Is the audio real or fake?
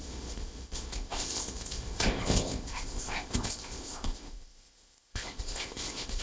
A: fake